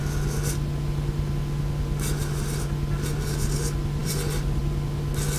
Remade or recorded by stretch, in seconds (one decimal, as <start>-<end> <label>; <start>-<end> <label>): 0.0-4.0 recorded; 4.0-4.6 remade; 4.6-5.4 recorded